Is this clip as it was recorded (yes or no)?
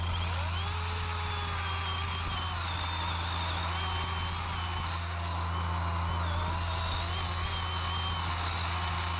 yes